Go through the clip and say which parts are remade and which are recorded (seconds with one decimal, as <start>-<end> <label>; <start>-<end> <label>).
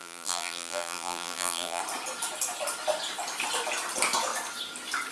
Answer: 0.0-1.8 remade; 1.8-5.1 recorded